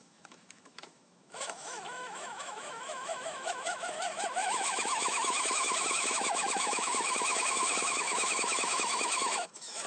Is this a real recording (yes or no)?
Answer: no